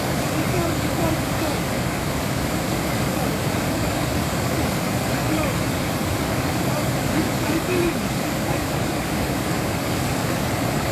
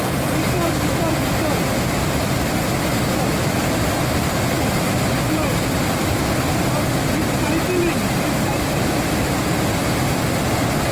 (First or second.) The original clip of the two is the second